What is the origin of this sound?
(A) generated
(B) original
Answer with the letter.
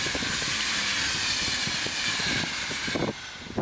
A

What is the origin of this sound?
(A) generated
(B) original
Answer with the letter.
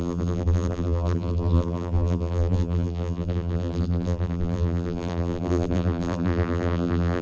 A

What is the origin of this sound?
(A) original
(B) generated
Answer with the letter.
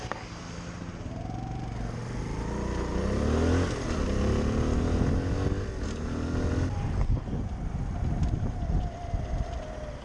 A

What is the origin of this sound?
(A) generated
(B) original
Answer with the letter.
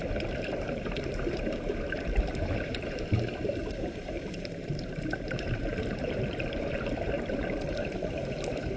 A